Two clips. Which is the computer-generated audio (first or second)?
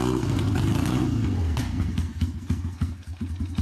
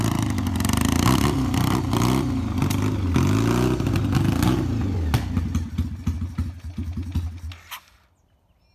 first